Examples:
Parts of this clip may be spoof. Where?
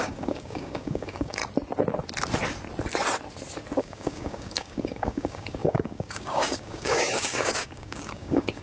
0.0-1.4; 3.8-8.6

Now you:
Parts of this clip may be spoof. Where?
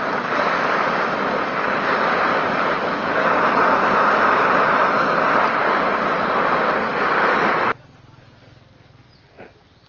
2.3-3.3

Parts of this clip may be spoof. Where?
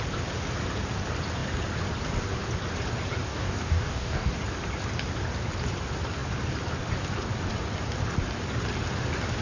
3.3-4.3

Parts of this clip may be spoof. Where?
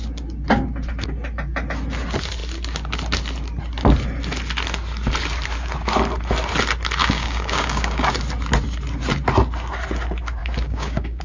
7.0-8.1; 10.4-11.2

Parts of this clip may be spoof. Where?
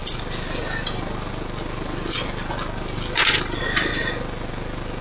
none